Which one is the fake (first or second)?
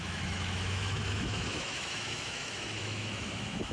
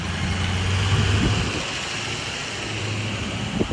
first